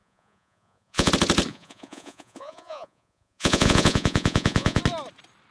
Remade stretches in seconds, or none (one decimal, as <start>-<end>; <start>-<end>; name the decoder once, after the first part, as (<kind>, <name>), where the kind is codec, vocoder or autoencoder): 0.0-1.1 (vocoder, Vocos); 1.5-4.8